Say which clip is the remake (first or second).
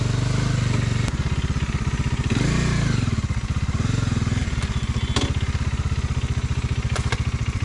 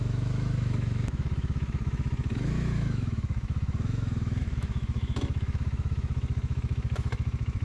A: second